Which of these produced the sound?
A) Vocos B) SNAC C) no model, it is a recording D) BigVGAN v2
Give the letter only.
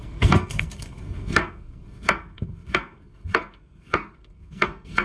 B